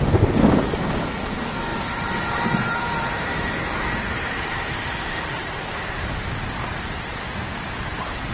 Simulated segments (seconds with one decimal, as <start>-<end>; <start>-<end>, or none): 1.7-6.3